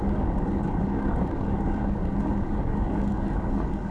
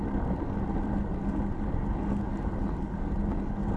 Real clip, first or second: second